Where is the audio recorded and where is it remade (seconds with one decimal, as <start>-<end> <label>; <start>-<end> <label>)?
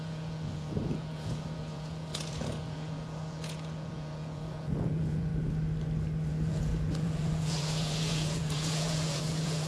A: 0.0-5.3 remade; 5.3-6.3 recorded; 6.3-9.7 remade